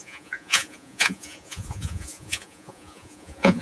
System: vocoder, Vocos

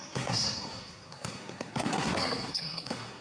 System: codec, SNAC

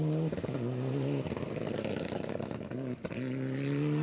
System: none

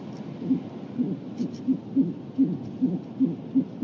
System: none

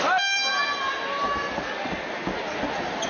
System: none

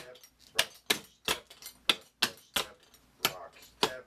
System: none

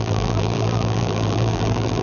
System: vocoder, BigVGAN v2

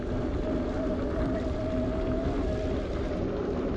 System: none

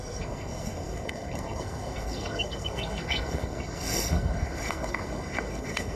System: codec, SNAC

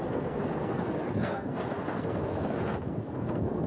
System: codec, SNAC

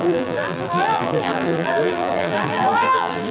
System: vocoder, BigVGAN v2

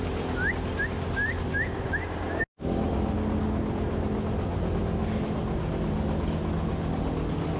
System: none